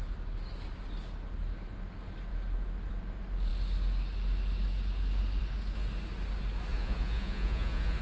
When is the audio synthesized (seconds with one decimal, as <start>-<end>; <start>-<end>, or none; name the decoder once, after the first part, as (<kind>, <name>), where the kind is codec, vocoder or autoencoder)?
6.7-8.0 (vocoder, Vocos)